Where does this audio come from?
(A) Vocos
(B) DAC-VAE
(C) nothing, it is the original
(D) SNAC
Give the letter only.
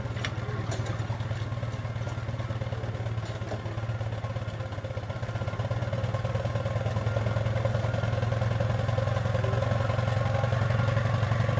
C